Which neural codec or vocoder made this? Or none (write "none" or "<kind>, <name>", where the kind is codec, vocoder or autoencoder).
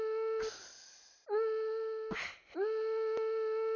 none